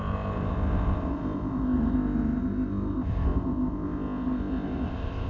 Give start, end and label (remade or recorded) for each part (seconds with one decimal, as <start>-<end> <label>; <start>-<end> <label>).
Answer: 0.0-5.3 remade